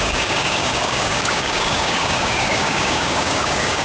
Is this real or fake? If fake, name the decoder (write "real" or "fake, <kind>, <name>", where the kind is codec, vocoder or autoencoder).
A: fake, codec, DAC